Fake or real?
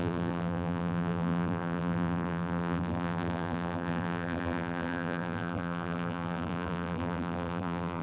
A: fake